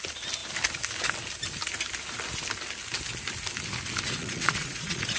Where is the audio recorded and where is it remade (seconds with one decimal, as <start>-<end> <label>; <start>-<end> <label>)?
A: 0.0-4.2 recorded; 4.2-5.2 remade

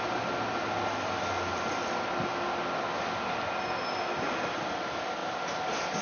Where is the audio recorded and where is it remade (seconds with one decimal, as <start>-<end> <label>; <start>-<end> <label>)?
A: 0.0-6.0 recorded

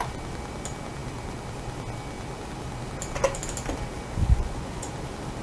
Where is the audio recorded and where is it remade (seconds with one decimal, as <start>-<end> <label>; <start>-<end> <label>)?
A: 0.0-4.2 recorded; 4.2-4.9 remade; 4.9-5.4 recorded

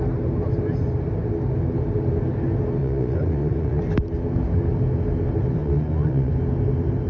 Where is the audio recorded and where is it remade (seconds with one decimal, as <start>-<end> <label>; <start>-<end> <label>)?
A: 0.0-2.8 recorded; 2.8-3.8 remade; 3.8-5.6 recorded; 5.6-6.3 remade; 6.3-7.1 recorded

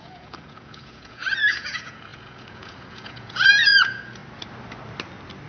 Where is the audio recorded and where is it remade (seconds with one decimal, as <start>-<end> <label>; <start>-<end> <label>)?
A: 0.0-4.2 remade; 4.2-5.5 recorded

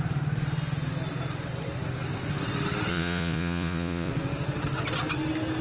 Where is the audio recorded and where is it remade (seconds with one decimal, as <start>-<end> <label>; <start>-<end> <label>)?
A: 0.0-2.9 recorded; 2.9-4.1 remade; 4.1-5.6 recorded

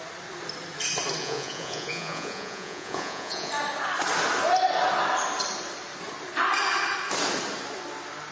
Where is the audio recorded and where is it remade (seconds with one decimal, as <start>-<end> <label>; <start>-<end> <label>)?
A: 0.0-1.2 recorded; 1.2-3.5 remade; 3.5-8.3 recorded

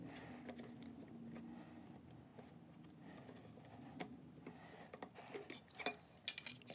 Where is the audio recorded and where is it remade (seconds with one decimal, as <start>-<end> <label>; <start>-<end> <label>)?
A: 0.0-6.7 recorded